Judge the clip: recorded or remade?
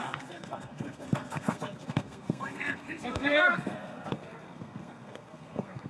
remade